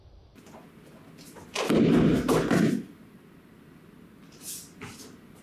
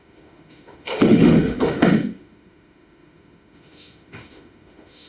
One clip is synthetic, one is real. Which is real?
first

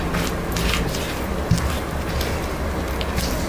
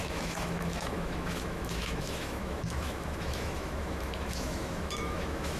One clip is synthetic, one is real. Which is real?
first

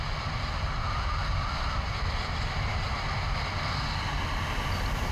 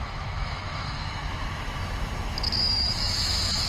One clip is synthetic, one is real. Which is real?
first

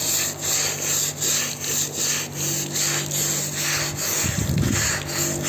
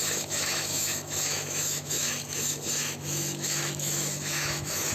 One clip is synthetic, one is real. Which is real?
first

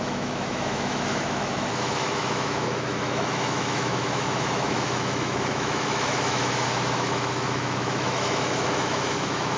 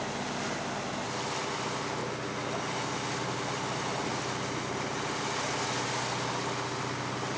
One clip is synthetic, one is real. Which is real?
second